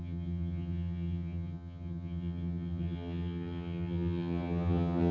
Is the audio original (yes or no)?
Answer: no